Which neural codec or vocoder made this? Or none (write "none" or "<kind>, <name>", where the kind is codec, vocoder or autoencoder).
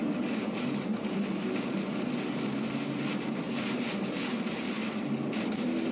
none